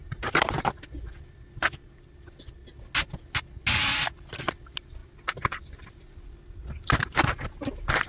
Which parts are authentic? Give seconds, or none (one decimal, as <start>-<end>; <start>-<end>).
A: 0.0-8.1